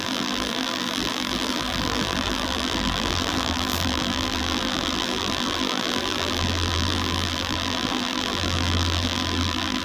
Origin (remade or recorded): remade